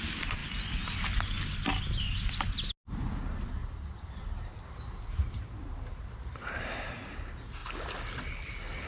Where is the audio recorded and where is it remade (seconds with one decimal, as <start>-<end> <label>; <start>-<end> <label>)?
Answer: 0.0-0.4 remade; 0.4-3.0 recorded; 3.0-7.6 remade; 7.6-8.9 recorded